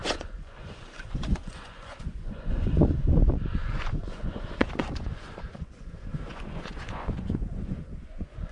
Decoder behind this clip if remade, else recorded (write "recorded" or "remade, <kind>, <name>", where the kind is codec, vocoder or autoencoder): remade, vocoder, Vocos